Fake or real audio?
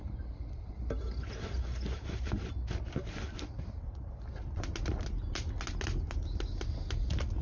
real